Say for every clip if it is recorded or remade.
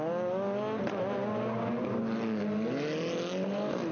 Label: recorded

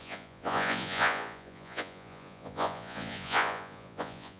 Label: remade